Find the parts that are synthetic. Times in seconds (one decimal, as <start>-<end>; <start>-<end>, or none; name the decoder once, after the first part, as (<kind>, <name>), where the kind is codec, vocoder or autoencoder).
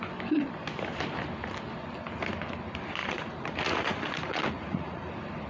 3.0-5.1 (vocoder, Vocos)